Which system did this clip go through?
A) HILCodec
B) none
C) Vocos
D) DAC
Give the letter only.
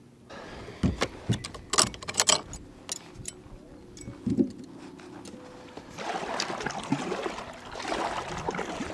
B